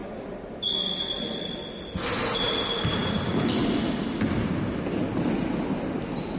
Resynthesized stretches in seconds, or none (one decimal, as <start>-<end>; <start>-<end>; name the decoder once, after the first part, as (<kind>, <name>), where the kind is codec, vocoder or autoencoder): 0.0-1.7 (vocoder, BigVGAN v2)